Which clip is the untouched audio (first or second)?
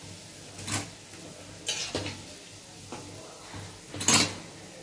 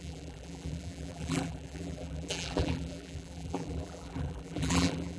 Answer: first